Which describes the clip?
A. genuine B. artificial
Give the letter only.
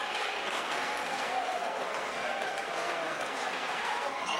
B